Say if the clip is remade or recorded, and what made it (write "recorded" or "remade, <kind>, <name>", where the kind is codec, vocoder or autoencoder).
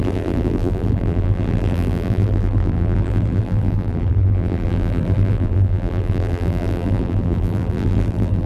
remade, vocoder, BigVGAN v2